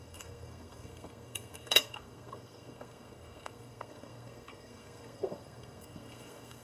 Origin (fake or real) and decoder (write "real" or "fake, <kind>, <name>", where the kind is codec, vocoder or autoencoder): fake, codec, SNAC